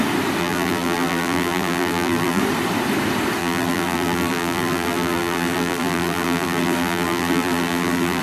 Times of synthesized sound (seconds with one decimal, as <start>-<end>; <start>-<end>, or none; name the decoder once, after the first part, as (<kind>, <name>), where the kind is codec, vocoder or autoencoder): 0.4-2.4 (vocoder, BigVGAN v2); 3.4-8.2